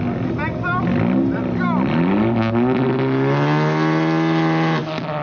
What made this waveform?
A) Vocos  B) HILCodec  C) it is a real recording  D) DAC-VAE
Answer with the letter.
C